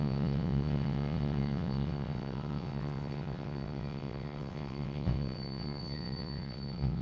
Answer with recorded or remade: remade